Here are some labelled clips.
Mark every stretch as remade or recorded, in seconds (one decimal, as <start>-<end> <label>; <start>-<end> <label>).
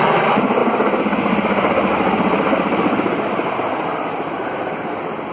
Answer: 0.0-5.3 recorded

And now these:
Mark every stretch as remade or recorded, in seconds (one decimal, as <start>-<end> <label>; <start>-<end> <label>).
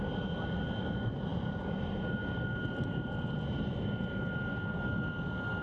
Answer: 0.0-5.6 recorded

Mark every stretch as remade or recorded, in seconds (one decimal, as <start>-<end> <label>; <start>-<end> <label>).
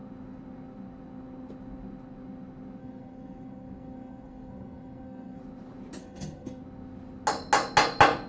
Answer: 0.0-2.8 recorded; 2.8-5.4 remade; 5.4-6.0 recorded; 6.0-6.6 remade; 6.6-8.3 recorded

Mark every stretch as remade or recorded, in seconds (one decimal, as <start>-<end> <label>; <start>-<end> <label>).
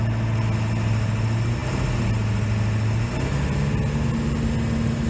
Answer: 0.0-5.1 recorded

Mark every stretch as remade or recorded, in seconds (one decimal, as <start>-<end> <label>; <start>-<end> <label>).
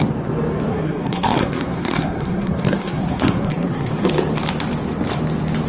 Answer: 0.0-0.7 recorded; 0.7-4.1 remade; 4.1-5.7 recorded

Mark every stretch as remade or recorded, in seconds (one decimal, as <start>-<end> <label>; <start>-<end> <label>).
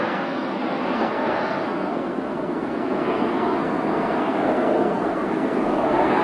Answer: 0.0-6.2 remade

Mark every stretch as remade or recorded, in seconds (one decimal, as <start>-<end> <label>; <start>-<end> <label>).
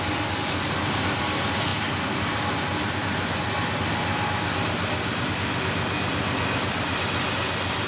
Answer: 0.0-7.9 recorded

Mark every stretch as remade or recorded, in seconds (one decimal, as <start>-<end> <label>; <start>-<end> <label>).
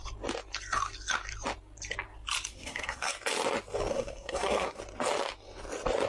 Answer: 0.0-2.5 recorded; 2.5-3.1 remade; 3.1-3.9 recorded; 3.9-4.8 remade; 4.8-6.1 recorded